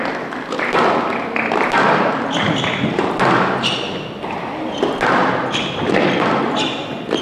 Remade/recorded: recorded